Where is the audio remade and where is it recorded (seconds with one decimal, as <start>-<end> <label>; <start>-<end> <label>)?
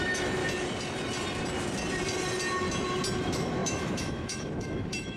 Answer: 0.0-0.4 remade; 0.4-3.2 recorded; 3.2-5.2 remade